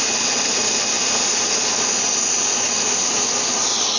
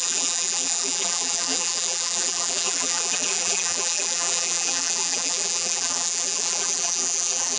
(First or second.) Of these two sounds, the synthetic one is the second